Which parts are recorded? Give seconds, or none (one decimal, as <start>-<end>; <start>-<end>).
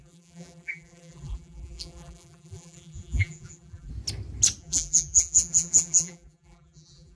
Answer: 3.9-4.6